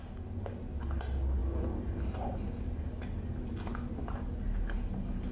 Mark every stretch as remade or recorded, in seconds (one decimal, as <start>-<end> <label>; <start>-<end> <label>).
0.0-5.3 recorded